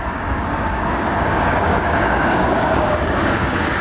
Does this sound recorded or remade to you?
remade